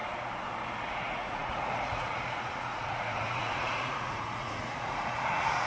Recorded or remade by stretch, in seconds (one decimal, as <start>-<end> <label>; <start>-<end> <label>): 0.0-0.9 recorded; 0.9-5.7 remade

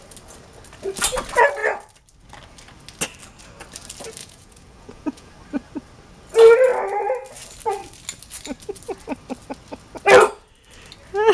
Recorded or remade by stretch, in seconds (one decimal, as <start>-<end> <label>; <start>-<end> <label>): 0.0-4.2 recorded; 4.2-5.3 remade; 5.3-11.3 recorded

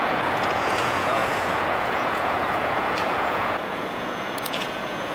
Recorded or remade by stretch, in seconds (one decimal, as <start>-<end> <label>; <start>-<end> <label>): 0.0-5.1 remade

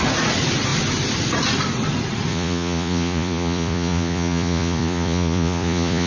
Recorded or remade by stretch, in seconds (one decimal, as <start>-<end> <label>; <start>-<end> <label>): 0.0-2.3 recorded; 2.3-6.1 remade